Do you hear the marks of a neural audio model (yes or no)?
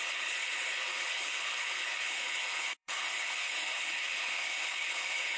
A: yes